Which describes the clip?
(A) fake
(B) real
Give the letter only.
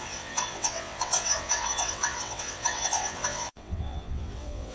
A